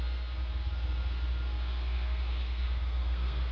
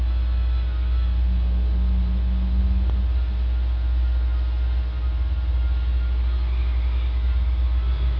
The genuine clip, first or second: second